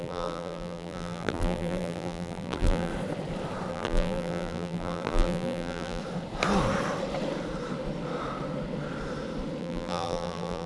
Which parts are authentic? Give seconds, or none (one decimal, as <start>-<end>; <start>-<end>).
2.9-3.7; 6.0-9.6